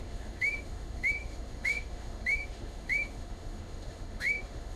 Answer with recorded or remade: remade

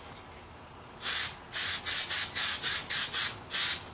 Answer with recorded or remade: recorded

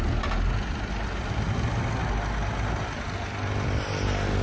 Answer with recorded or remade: recorded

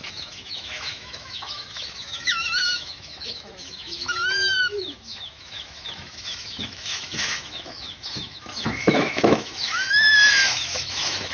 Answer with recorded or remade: remade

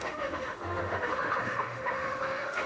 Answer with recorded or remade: remade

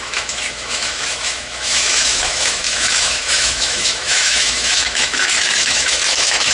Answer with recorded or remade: remade